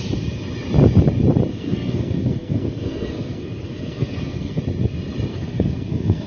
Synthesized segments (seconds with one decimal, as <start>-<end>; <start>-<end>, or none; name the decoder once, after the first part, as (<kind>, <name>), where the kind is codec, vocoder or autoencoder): 1.5-4.6 (codec, SNAC); 5.3-6.3